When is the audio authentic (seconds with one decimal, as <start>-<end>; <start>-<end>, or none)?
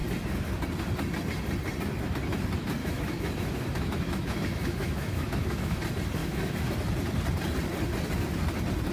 0.0-2.8; 5.8-6.2; 6.7-8.9